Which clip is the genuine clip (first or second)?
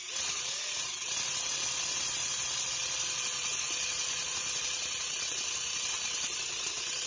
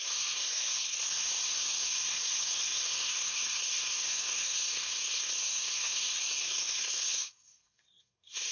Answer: first